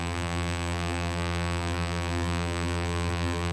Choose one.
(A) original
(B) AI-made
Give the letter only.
B